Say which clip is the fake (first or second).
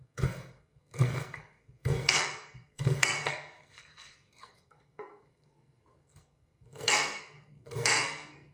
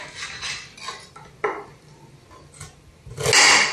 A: first